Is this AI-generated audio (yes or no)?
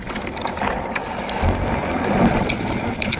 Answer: no